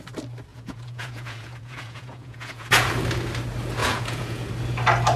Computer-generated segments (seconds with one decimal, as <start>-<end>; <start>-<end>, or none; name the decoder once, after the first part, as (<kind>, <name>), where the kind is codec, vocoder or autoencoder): 0.5-2.9 (vocoder, Vocos); 3.8-4.5